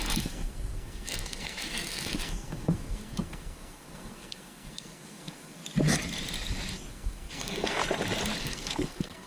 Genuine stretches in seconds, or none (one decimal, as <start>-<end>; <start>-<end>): 5.6-6.9; 7.8-8.4